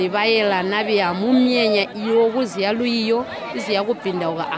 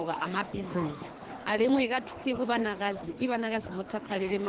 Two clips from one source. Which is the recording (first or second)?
first